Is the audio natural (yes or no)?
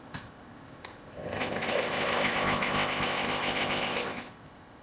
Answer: no